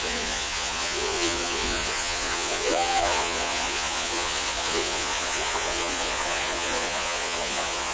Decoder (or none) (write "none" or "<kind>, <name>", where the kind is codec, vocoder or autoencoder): vocoder, Vocos